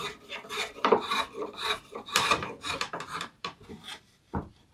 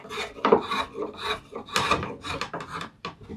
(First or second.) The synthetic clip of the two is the first